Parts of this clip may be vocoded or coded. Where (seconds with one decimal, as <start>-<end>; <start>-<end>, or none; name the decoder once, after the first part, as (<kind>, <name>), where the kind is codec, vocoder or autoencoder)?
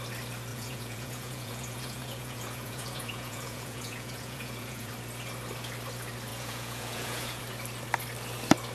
0.5-4.9 (vocoder, Vocos); 6.3-7.4